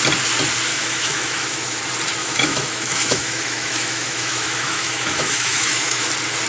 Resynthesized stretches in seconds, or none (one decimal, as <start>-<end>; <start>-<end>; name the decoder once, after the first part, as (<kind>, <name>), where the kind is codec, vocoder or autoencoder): 0.7-1.8 (autoencoder, DAC-VAE); 2.2-6.1

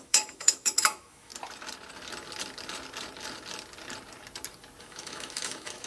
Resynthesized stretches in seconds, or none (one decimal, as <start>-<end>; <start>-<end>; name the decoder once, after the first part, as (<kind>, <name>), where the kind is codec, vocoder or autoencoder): 0.0-1.3 (autoencoder, DAC-VAE); 4.8-5.9

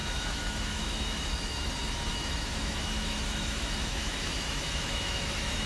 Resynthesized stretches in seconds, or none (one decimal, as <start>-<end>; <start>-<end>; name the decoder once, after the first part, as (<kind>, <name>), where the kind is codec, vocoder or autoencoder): 0.0-1.7 (autoencoder, DAC-VAE); 2.1-5.7